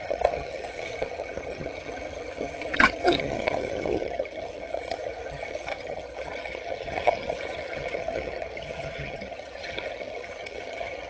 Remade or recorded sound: remade